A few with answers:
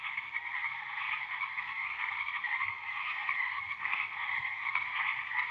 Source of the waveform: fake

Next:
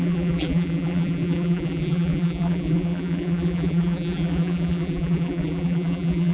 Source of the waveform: fake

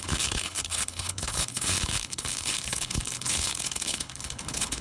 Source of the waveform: fake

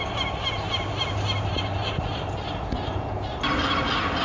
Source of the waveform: real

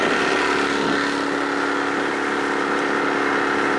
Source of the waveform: real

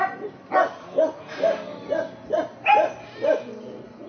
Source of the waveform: real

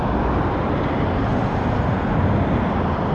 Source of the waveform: real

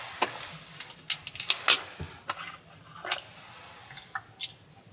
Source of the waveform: real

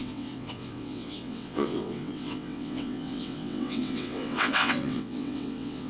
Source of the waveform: fake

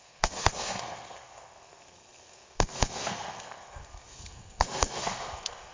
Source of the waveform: fake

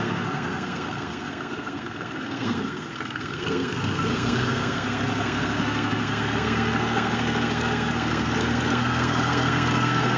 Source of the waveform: fake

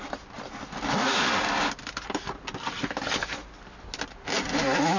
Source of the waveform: real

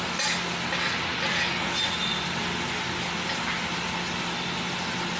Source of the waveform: real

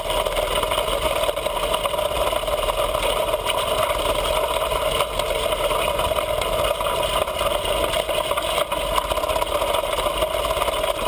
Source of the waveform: real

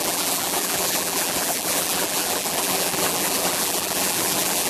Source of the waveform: fake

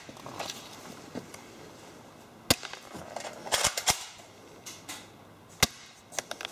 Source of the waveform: real